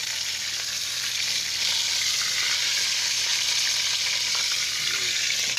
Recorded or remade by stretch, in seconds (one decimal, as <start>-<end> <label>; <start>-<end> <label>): 0.0-0.9 remade; 0.9-5.6 recorded